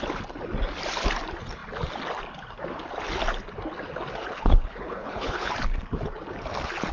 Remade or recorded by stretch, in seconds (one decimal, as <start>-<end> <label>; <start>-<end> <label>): 0.0-4.2 recorded; 4.2-5.5 remade; 5.5-6.9 recorded